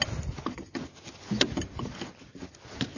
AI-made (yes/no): no